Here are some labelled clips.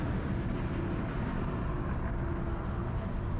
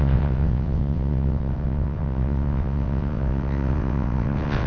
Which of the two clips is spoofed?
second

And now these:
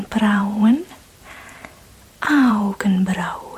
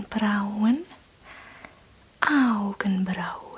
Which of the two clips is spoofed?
first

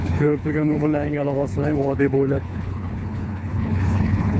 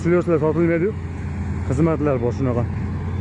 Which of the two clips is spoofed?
first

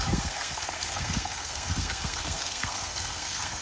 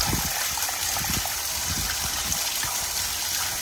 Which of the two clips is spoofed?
first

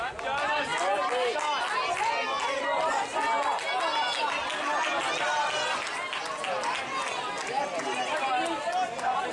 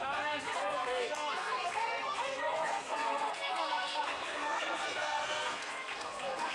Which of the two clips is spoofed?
second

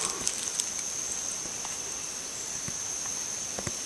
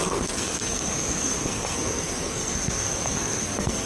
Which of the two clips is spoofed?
second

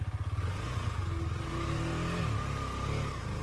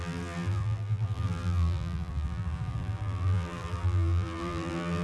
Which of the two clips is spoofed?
second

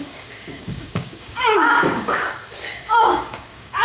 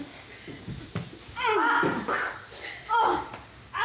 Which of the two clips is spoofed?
first